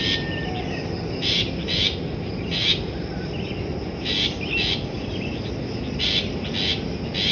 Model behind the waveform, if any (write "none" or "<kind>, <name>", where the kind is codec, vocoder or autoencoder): none